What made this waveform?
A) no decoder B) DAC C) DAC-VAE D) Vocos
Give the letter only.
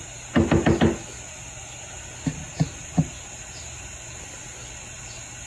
A